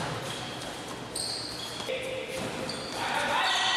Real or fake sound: real